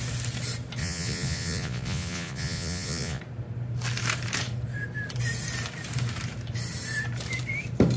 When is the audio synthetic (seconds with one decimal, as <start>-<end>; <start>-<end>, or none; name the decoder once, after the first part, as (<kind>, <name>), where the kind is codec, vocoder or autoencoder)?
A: 0.8-3.2 (vocoder, Vocos)